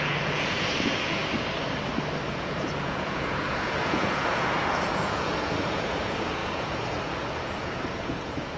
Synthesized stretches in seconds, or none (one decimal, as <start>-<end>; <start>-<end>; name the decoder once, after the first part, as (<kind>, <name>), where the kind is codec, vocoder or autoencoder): 0.0-1.2 (vocoder, Vocos); 2.3-8.6